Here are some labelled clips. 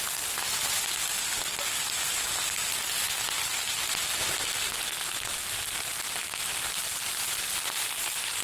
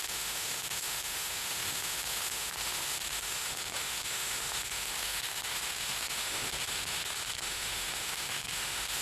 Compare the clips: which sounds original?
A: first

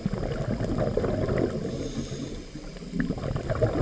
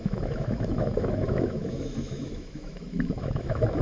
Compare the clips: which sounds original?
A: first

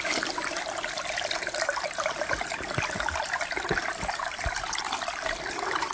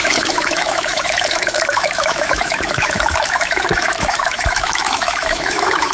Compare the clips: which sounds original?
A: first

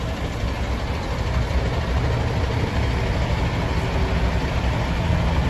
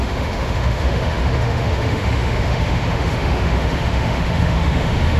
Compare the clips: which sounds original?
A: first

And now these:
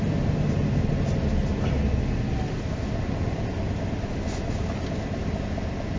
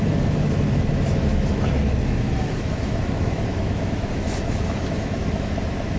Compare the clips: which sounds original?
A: first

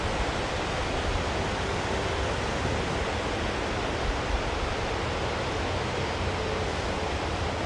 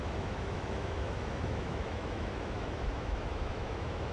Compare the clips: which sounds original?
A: first